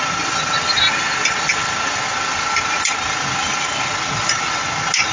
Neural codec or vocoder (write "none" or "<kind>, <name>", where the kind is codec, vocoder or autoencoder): none